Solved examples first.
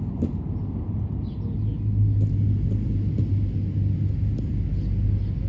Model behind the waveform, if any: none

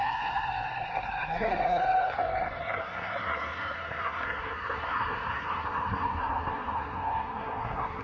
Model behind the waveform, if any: codec, SNAC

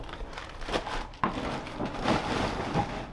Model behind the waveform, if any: none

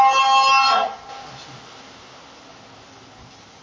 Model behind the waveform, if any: none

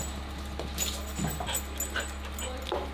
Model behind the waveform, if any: none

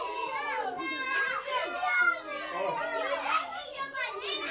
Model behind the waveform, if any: none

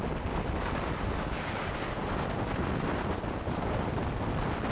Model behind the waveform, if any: none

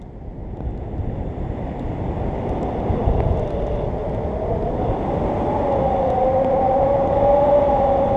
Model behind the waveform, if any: none